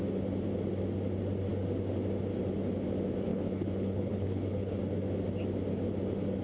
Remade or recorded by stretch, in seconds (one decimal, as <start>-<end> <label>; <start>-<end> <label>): 0.0-3.3 recorded; 3.3-4.8 remade; 4.8-6.4 recorded